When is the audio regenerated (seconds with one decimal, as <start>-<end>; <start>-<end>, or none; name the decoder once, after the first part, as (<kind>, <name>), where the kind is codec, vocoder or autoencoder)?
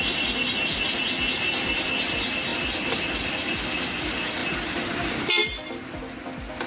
none